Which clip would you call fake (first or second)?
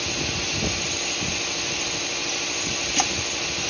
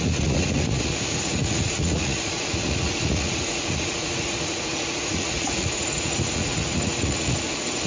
second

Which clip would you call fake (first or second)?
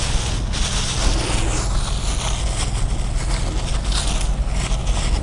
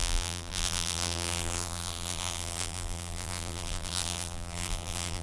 second